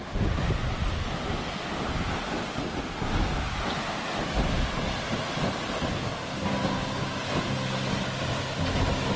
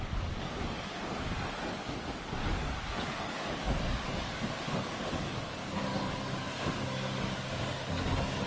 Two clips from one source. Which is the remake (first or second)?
second